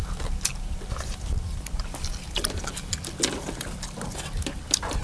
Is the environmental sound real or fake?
real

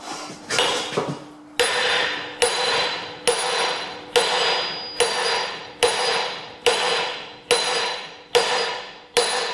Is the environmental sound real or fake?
real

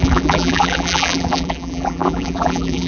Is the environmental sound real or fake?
fake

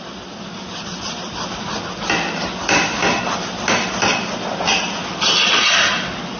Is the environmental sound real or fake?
real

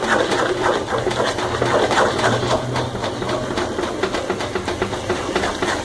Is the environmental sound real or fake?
real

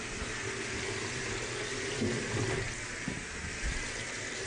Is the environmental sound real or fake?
real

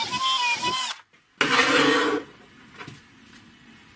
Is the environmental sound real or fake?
real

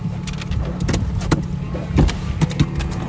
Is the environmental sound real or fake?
real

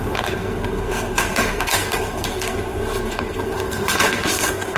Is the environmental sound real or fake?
fake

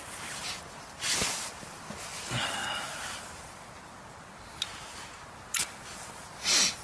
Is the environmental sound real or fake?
real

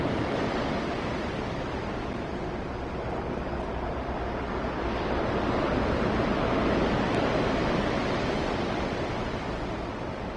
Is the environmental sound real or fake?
real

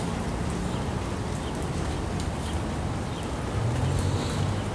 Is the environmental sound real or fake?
real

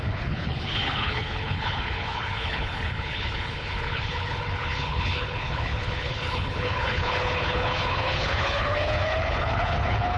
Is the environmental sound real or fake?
fake